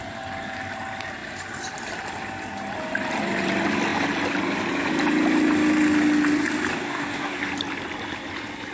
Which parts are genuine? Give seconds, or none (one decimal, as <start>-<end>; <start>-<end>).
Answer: 0.0-6.7; 7.4-8.7